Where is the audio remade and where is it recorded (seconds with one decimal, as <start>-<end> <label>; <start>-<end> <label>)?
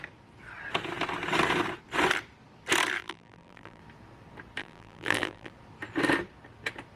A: 0.0-3.0 recorded; 3.0-3.8 remade; 3.8-4.6 recorded; 4.6-5.5 remade; 5.5-7.0 recorded